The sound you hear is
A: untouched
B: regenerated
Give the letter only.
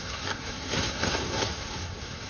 B